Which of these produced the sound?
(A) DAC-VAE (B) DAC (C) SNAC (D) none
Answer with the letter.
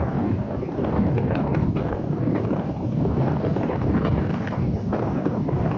B